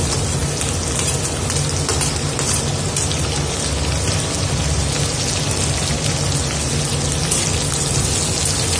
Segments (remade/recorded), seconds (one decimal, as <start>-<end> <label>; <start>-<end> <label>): 0.0-8.8 recorded